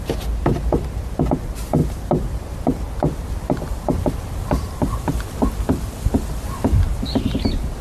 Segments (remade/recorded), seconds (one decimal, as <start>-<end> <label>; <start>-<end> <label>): 0.0-1.8 recorded; 1.8-5.5 remade; 5.5-6.7 recorded; 6.7-7.8 remade